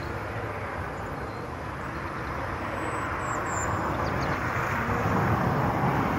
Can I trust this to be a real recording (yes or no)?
yes